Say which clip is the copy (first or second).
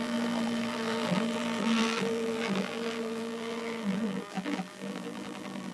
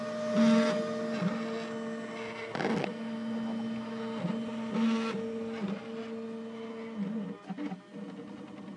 first